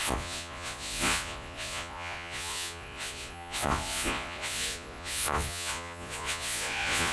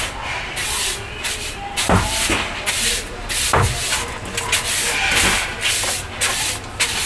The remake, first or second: first